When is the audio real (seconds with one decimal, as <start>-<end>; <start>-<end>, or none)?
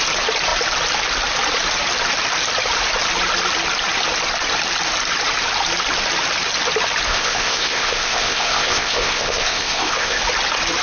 0.0-7.1; 10.2-10.8